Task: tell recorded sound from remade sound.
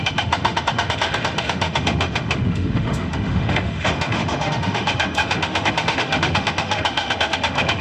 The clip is remade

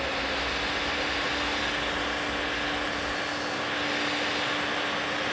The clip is recorded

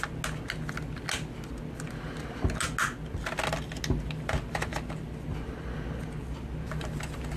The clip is recorded